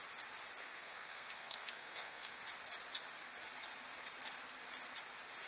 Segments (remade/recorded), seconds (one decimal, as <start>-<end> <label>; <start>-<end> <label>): 0.0-0.6 recorded; 0.6-2.4 remade; 2.4-5.5 recorded